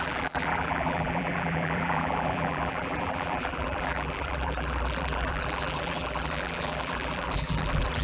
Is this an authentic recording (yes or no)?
no